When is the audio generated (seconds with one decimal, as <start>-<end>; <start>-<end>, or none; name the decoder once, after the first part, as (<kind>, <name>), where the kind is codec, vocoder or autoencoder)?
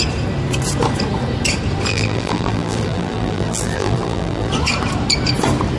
1.9-4.5 (vocoder, BigVGAN v2)